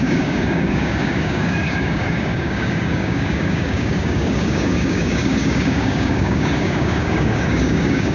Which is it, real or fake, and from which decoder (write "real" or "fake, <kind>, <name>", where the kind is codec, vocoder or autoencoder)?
fake, codec, DAC